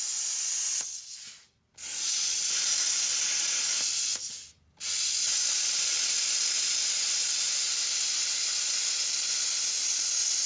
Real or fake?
real